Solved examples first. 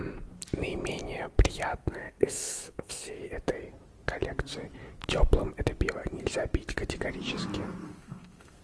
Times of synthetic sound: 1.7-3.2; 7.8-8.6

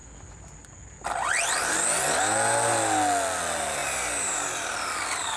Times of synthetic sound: none

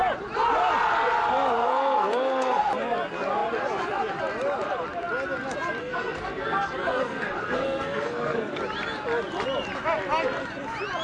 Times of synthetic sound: 1.6-2.7; 5.8-8.6

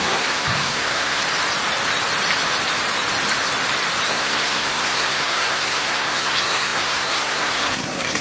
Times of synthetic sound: 0.0-1.2; 4.1-8.2